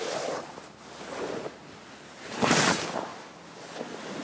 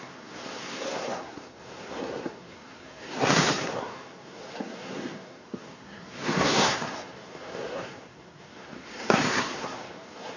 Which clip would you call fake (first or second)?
second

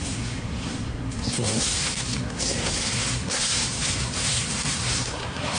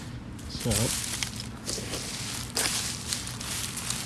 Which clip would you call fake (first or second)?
first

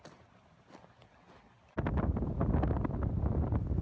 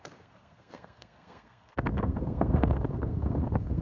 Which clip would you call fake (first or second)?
second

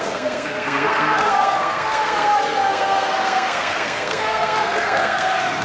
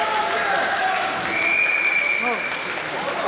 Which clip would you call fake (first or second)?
first